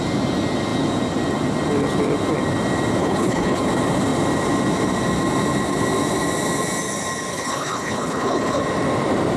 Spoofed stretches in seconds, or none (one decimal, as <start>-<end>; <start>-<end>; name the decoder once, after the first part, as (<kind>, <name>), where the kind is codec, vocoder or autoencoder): 3.0-3.6 (codec, HILCodec); 7.3-8.6